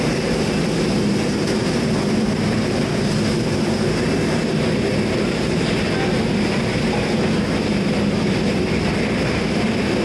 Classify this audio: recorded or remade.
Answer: recorded